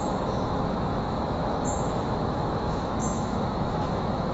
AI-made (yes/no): yes